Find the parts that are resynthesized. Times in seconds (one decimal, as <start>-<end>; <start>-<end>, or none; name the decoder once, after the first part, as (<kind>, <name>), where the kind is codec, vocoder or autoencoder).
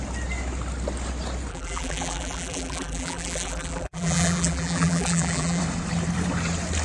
1.5-5.6 (vocoder, BigVGAN v2)